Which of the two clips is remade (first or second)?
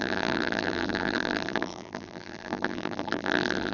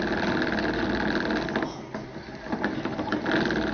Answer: first